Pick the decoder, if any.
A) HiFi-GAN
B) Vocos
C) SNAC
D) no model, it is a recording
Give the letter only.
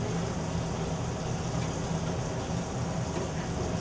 D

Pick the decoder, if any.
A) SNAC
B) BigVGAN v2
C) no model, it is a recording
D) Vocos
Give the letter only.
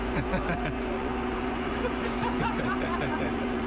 D